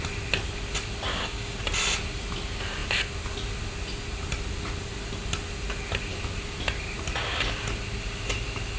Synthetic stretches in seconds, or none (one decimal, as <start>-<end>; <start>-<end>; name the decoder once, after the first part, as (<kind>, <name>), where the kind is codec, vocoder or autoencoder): 1.1-1.6 (codec, DAC)